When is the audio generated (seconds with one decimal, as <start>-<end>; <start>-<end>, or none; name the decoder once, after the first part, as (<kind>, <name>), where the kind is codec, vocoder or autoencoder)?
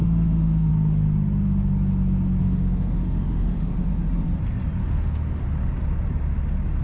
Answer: 0.0-0.7 (autoencoder, DAC-VAE); 2.4-3.9; 4.8-5.5